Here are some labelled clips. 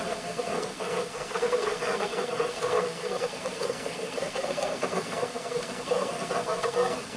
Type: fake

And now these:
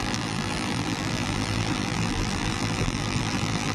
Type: fake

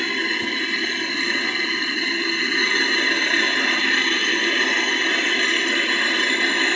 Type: real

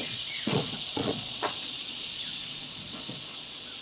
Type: fake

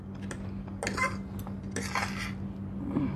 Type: real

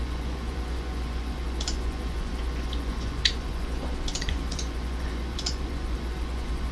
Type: fake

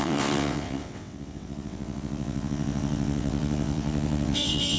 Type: fake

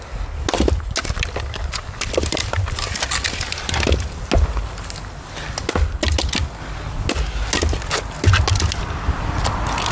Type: real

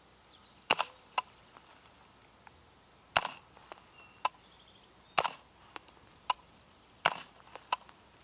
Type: real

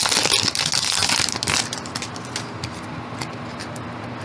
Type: real